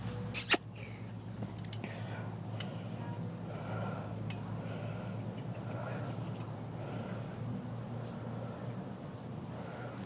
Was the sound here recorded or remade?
recorded